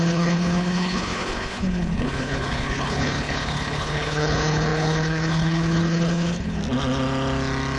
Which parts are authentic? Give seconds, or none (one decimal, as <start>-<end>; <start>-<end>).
6.6-7.8